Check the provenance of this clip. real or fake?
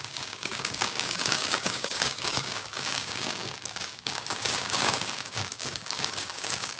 fake